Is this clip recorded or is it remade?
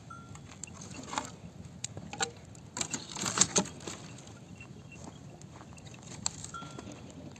recorded